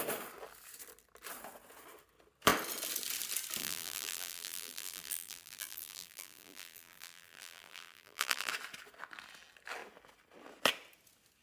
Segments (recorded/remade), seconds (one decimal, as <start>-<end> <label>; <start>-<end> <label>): 0.0-3.6 recorded; 3.6-8.5 remade; 8.5-11.4 recorded